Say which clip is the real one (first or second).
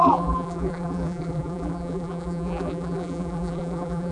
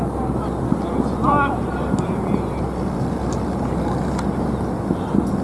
second